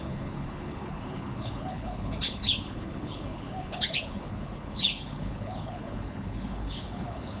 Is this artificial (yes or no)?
yes